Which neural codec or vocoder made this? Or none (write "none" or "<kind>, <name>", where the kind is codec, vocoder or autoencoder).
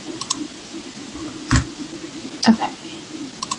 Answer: none